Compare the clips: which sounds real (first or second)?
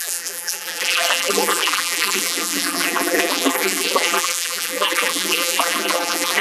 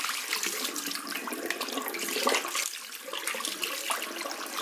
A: second